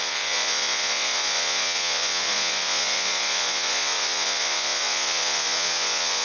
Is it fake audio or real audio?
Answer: fake